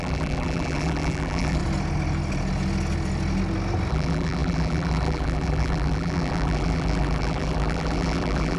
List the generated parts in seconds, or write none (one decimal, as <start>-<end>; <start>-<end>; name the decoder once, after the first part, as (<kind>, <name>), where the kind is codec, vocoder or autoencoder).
0.0-1.6 (vocoder, BigVGAN v2); 3.9-8.6

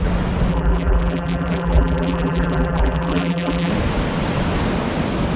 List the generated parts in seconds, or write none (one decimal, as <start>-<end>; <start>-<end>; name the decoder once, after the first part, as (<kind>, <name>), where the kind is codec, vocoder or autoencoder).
0.5-3.7 (vocoder, BigVGAN v2)

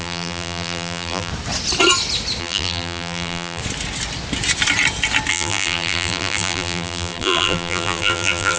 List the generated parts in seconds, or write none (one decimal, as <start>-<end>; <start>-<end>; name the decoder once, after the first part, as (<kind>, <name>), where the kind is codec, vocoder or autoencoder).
0.0-1.3 (vocoder, BigVGAN v2); 2.4-3.6; 5.3-8.6

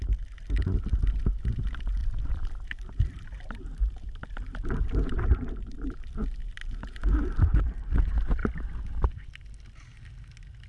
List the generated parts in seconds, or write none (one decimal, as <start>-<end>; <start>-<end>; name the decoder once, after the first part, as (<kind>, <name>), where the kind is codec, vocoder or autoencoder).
2.0-6.1 (vocoder, BigVGAN v2); 6.6-8.0

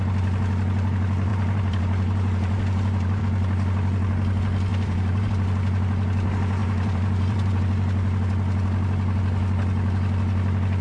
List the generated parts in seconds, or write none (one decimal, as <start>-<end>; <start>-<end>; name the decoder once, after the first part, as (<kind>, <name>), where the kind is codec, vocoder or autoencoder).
1.3-3.2 (vocoder, BigVGAN v2); 4.7-5.3; 6.6-7.6

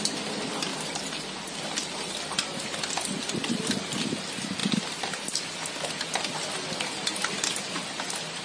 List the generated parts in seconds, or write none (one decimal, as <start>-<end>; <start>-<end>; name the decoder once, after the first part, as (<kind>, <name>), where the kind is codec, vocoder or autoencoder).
0.7-3.3 (vocoder, BigVGAN v2)